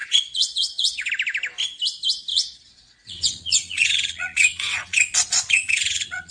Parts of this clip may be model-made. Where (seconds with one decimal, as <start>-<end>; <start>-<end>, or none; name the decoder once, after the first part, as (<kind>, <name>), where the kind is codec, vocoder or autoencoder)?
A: 0.0-1.1 (vocoder, Vocos); 2.3-6.3